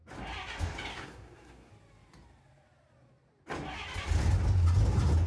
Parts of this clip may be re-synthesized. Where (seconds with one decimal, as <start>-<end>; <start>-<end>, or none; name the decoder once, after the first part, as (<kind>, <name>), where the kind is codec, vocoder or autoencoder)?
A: 0.9-1.7 (codec, SNAC)